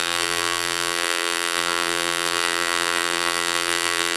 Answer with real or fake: fake